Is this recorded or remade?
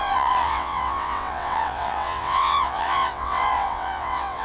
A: remade